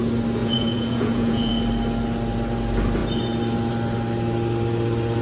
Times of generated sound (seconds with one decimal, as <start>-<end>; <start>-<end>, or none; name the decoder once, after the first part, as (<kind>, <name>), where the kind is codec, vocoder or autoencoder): 0.4-1.5 (vocoder, Vocos)

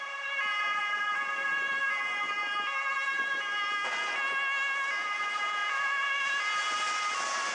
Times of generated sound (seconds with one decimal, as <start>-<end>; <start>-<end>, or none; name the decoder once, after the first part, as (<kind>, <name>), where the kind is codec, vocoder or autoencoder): 0.5-1.0 (vocoder, Vocos); 5.6-6.3

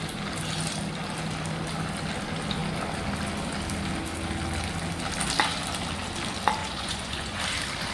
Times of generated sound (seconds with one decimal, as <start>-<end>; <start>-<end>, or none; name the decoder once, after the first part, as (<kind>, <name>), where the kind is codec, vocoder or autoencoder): 6.6-7.4 (vocoder, Vocos)

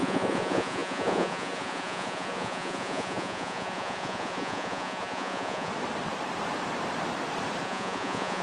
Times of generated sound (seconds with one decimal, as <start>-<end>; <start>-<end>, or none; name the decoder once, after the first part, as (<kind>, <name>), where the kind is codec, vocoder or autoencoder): 0.0-5.7 (vocoder, Vocos); 7.6-8.4